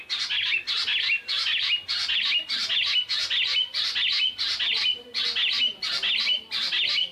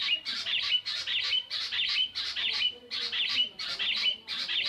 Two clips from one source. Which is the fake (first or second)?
second